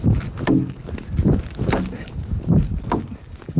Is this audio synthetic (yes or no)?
no